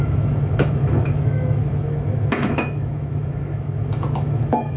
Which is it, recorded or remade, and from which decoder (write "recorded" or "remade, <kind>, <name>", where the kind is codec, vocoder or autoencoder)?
remade, autoencoder, DAC-VAE